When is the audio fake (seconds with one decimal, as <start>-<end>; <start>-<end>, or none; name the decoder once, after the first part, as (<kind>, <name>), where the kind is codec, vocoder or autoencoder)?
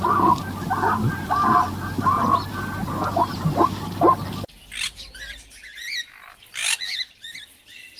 none